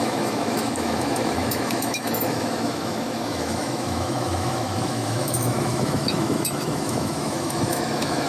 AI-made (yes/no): yes